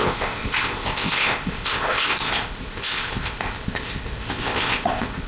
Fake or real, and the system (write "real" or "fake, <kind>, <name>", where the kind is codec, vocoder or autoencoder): fake, codec, ZipCodec